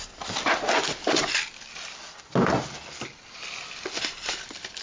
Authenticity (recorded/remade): recorded